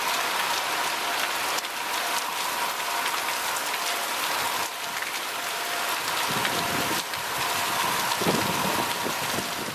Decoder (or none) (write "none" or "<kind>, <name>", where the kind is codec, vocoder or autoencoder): none